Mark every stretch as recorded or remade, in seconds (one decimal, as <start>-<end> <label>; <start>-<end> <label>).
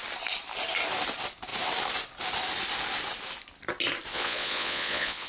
0.0-4.1 recorded; 4.1-5.3 remade